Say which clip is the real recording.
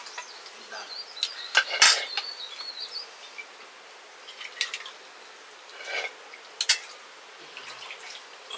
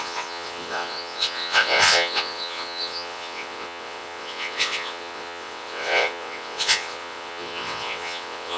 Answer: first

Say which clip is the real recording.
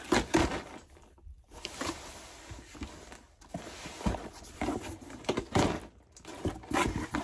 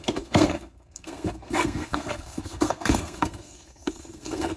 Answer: first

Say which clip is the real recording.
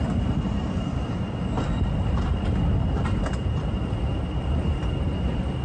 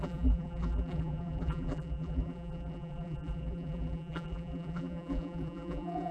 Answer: first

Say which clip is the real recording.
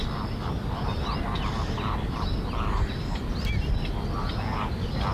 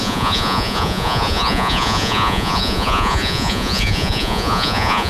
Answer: first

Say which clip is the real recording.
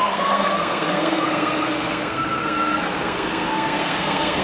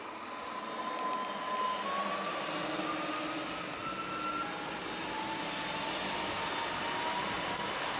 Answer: second